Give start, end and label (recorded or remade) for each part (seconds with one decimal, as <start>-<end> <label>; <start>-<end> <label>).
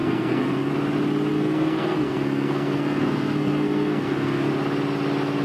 0.0-0.7 remade; 0.7-1.3 recorded; 1.3-4.5 remade; 4.5-5.4 recorded